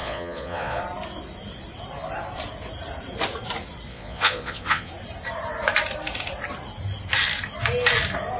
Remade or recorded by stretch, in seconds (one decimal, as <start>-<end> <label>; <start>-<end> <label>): 0.0-0.8 remade; 0.8-3.9 recorded; 3.9-4.9 remade; 4.9-8.4 recorded